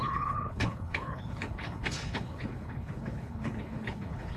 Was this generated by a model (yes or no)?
yes